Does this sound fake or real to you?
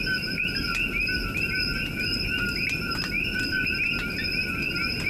real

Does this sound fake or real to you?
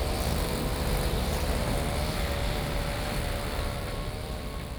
real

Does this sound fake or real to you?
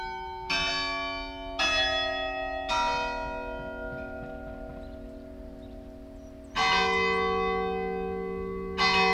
real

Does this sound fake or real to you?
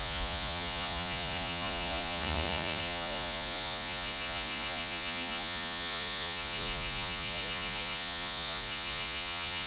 fake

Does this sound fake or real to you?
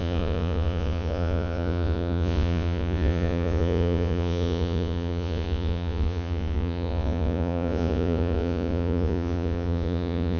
fake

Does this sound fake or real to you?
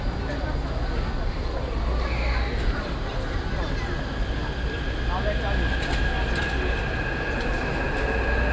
real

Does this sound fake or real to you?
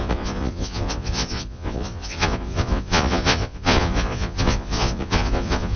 fake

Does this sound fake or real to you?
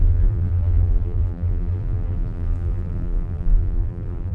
fake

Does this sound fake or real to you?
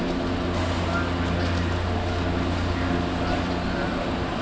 real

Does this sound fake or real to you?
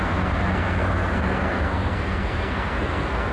fake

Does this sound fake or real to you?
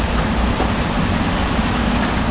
real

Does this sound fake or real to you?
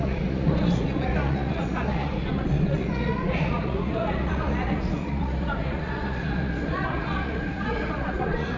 fake